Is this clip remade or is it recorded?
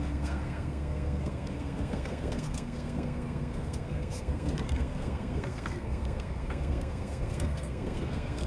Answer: remade